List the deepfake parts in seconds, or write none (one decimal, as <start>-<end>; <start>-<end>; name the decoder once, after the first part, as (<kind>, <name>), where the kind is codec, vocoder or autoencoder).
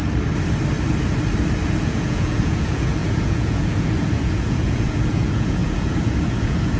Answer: 1.8-6.8 (vocoder, Vocos)